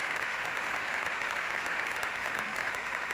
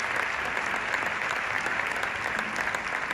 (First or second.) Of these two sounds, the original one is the second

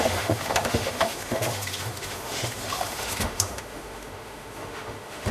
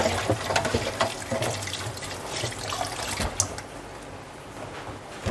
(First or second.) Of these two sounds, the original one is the second